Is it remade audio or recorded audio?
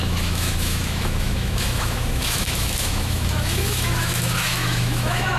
remade